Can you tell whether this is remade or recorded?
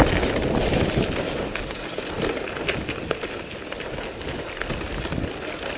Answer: recorded